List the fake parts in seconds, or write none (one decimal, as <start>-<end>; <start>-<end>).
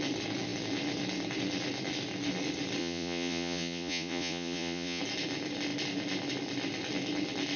2.8-5.0